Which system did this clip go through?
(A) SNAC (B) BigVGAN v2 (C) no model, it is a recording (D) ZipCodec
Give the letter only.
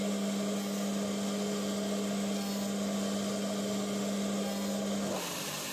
C